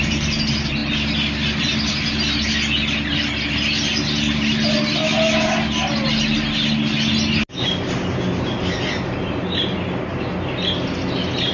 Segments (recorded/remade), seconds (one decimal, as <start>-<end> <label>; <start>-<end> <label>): 0.0-11.5 recorded